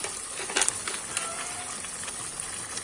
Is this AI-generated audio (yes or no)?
no